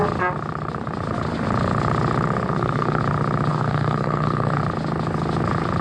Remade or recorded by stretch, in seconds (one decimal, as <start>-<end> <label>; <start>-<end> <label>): 0.0-2.5 recorded; 2.5-3.0 remade; 3.0-3.5 recorded; 3.5-4.6 remade; 4.6-5.8 recorded